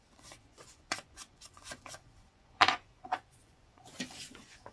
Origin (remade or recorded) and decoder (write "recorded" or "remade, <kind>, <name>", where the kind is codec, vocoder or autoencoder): remade, vocoder, Vocos